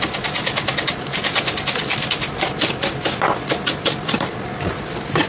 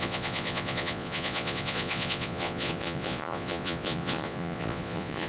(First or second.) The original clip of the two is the first